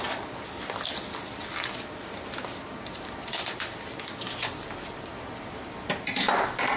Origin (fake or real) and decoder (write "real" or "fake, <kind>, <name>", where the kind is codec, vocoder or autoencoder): real